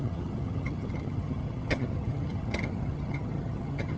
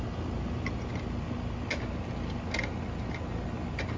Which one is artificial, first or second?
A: first